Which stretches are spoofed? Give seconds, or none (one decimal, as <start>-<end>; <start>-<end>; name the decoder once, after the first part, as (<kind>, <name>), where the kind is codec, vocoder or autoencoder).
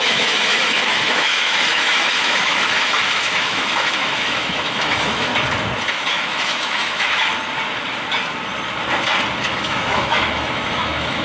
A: 0.0-5.3 (autoencoder, DAC-VAE); 5.9-7.3; 9.5-11.2